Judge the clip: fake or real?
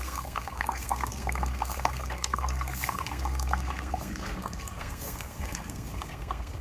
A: fake